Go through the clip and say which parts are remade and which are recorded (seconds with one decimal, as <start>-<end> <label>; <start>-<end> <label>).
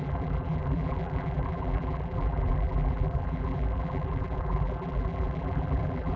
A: 0.0-6.2 remade